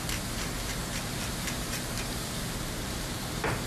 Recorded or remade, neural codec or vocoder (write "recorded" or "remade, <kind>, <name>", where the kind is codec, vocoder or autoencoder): remade, vocoder, BigVGAN v2